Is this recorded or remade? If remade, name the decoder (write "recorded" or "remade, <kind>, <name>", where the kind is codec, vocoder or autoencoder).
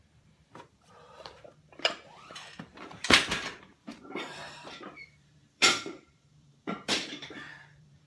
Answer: remade, vocoder, BigVGAN v2